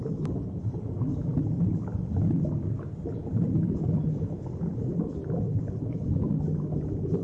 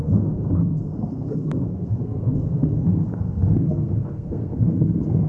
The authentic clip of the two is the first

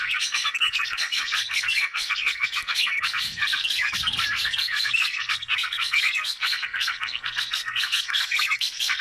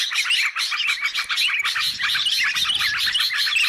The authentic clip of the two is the second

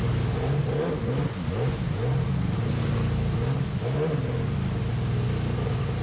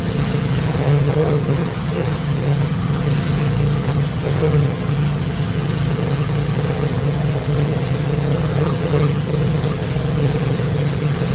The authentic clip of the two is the first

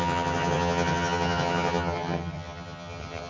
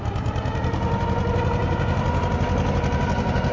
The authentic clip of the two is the second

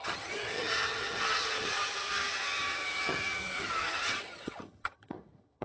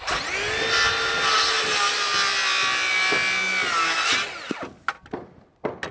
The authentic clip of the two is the second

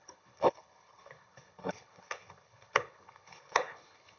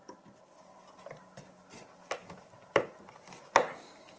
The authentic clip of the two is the second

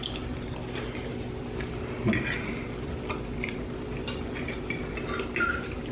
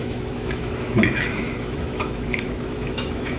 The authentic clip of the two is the first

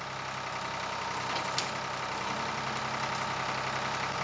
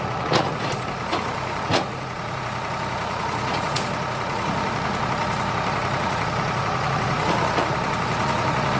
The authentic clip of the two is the first